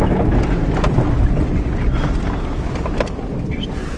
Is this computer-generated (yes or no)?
no